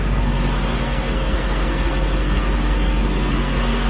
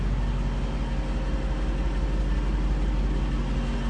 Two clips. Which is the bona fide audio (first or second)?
second